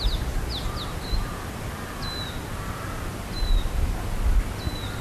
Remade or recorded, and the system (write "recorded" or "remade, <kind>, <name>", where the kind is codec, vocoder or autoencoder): recorded